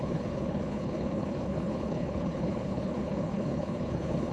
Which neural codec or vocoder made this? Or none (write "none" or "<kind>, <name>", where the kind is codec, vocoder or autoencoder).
codec, HILCodec